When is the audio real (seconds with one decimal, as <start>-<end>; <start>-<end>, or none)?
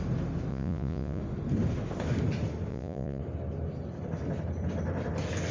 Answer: 0.0-0.5; 1.2-2.7; 3.2-5.5